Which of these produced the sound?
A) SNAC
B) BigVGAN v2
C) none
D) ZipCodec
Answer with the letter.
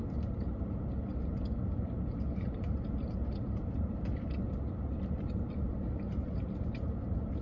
B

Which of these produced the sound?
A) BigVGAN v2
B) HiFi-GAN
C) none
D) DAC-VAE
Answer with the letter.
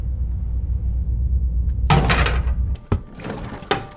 C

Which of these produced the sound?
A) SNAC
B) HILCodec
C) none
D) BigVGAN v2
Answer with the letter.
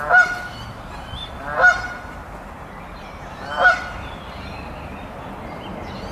D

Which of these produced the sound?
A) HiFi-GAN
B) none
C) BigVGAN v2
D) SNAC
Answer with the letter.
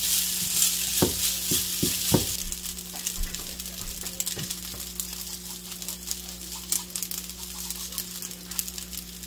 B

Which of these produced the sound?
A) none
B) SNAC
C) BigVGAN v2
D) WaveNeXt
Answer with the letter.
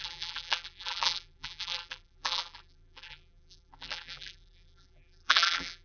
C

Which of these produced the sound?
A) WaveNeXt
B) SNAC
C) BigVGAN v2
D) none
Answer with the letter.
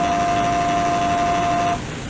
D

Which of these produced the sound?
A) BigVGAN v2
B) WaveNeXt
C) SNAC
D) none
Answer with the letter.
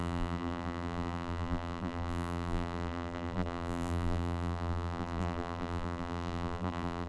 A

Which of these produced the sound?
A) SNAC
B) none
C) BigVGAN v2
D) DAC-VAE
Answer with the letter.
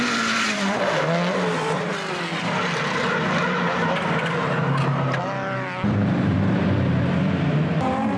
C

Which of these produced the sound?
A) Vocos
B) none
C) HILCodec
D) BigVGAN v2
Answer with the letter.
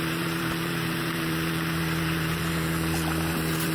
D